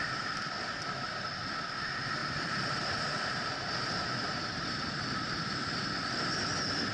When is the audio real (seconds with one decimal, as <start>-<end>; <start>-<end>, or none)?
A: 0.0-2.2; 6.3-6.9